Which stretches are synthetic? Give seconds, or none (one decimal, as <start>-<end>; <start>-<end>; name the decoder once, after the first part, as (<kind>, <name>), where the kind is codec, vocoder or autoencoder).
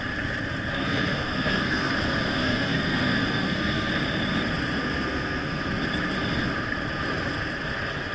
0.8-1.9 (codec, SNAC); 2.3-3.9; 4.8-5.6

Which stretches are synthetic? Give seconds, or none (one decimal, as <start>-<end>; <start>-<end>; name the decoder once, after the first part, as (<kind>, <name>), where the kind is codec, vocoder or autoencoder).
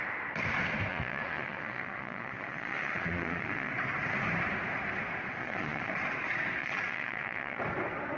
0.9-3.7 (vocoder, Vocos); 5.4-5.9; 6.6-7.6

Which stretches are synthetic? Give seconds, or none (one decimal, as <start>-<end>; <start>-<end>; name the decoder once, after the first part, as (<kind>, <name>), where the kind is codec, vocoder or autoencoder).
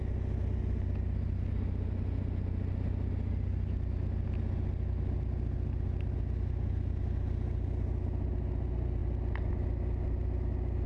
none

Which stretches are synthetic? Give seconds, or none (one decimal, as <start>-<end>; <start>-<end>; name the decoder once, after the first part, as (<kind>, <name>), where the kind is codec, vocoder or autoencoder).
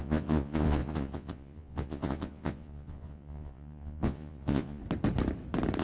0.0-4.8 (vocoder, Vocos)